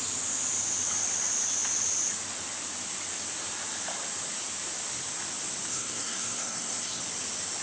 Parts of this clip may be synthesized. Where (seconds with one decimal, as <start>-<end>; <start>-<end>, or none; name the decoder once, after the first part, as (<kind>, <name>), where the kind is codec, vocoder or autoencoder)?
5.7-7.0 (codec, SNAC)